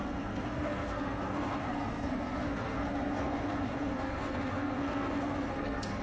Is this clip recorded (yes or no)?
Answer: no